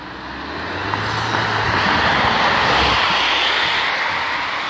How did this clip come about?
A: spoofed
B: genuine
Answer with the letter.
B